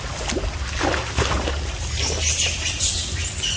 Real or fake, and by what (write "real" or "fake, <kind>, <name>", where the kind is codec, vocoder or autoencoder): real